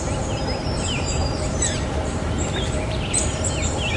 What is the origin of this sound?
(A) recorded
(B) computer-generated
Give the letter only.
B